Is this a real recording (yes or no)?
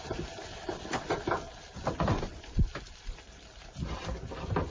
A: yes